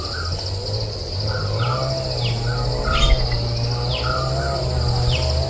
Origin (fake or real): real